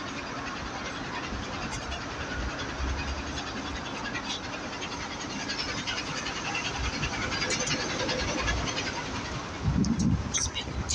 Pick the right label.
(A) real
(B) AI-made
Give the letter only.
A